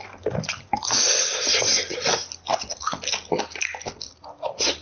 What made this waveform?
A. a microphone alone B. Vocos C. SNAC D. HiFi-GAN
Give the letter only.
A